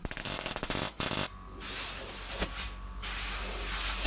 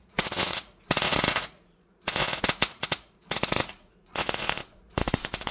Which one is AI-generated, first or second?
second